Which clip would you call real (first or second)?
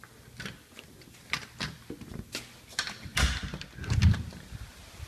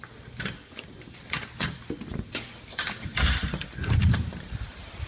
first